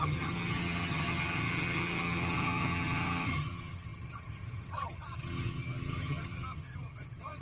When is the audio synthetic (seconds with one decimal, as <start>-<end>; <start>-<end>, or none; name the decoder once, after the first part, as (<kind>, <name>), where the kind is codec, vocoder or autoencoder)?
0.0-7.4 (vocoder, HiFi-GAN)